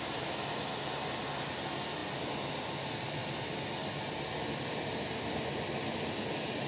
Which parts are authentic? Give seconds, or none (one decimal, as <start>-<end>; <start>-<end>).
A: 0.0-6.7